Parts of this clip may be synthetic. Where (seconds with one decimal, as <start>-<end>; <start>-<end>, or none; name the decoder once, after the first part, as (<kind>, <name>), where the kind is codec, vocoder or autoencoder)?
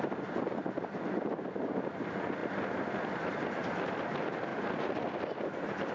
2.4-3.3 (vocoder, BigVGAN v2); 4.5-5.9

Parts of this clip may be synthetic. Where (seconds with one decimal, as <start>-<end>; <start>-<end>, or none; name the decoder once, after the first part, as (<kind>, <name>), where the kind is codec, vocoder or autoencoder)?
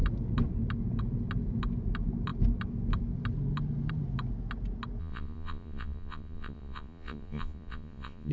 5.0-8.3 (vocoder, Vocos)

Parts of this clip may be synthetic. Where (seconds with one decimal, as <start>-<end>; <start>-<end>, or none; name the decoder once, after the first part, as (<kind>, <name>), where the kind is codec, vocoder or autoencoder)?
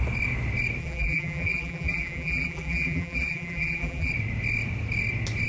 0.8-4.1 (vocoder, BigVGAN v2)